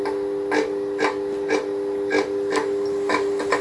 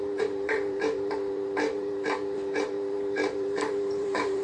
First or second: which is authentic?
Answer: first